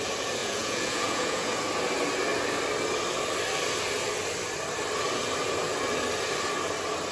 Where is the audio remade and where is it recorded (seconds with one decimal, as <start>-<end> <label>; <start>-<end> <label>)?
0.0-0.4 recorded; 0.4-1.5 remade; 1.5-7.1 recorded